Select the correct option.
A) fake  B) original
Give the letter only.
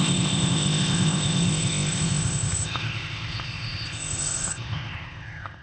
A